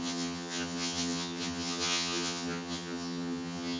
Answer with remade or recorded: remade